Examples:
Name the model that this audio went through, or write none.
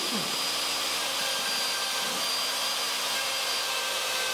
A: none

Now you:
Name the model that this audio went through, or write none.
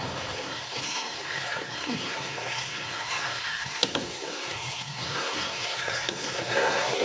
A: codec, SNAC